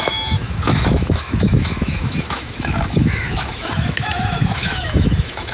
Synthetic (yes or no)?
yes